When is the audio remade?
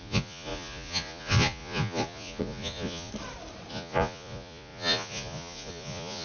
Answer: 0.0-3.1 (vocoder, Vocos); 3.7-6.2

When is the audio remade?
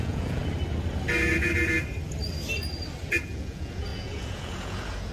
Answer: 0.0-0.4 (vocoder, Vocos); 3.1-5.1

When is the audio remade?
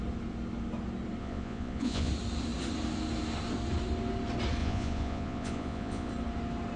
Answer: 1.2-2.1 (vocoder, Vocos); 4.6-6.1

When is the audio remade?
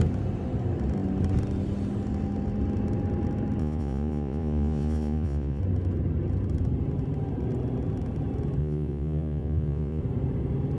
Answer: 3.6-5.6 (vocoder, Vocos); 8.6-10.0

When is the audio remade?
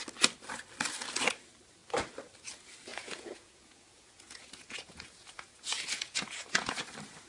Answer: 2.9-6.8 (vocoder, Vocos)